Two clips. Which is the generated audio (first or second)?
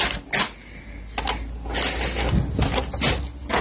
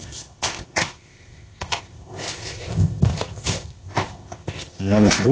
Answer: second